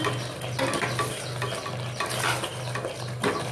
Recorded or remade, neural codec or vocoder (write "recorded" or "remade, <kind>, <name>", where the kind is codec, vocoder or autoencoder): recorded